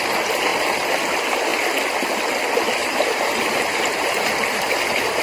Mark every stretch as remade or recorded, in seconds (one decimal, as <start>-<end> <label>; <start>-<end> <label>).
0.0-2.8 recorded; 2.8-5.2 remade